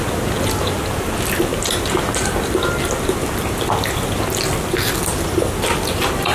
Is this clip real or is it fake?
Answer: real